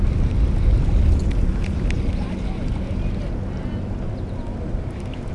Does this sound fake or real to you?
real